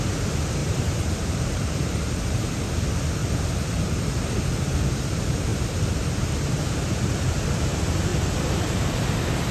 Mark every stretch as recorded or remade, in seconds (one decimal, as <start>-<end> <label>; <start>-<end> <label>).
0.0-0.6 recorded; 0.6-2.5 remade; 2.5-3.2 recorded; 3.2-4.3 remade; 4.3-8.1 recorded; 8.1-9.0 remade; 9.0-9.5 recorded